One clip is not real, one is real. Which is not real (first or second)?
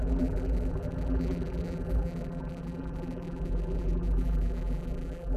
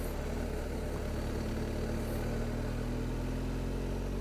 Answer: first